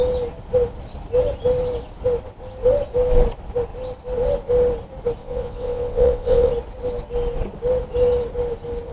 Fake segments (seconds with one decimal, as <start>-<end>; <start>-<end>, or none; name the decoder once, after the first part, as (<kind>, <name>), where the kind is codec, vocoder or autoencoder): 5.2-6.5 (vocoder, WaveNeXt)